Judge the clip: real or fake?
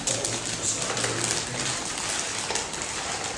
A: real